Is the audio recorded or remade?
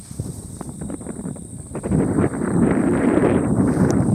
remade